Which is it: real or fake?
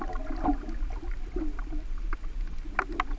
real